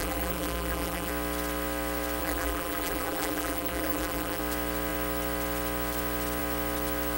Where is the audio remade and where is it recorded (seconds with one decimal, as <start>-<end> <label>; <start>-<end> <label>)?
0.0-1.1 remade; 1.1-2.2 recorded; 2.2-4.4 remade; 4.4-7.2 recorded